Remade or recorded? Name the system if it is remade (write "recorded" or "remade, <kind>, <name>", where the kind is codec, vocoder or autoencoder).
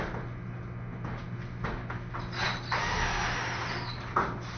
recorded